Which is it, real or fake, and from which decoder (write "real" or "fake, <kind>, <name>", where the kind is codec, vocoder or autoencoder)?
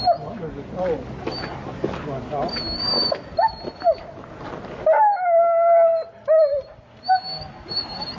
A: real